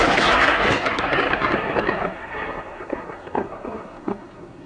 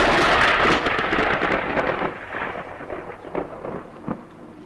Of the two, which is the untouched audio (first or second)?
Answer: second